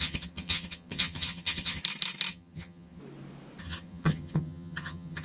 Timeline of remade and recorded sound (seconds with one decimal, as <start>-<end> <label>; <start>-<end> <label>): 0.0-1.8 remade; 1.8-2.3 recorded; 2.3-3.0 remade; 3.0-3.6 recorded; 3.6-5.2 remade